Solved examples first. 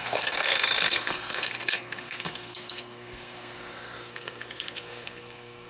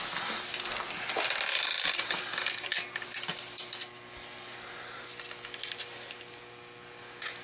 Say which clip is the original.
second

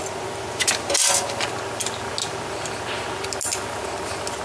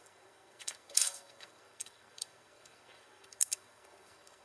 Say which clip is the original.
first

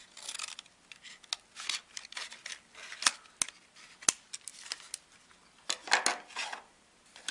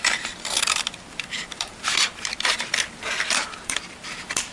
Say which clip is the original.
first